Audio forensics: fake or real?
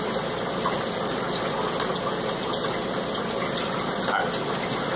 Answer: real